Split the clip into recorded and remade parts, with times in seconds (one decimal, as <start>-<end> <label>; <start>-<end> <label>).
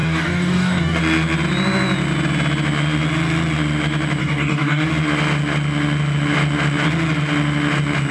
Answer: 0.0-1.0 remade; 1.0-4.2 recorded; 4.2-4.9 remade; 4.9-8.1 recorded